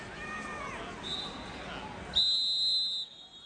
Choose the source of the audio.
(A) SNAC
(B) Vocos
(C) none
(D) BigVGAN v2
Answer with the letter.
C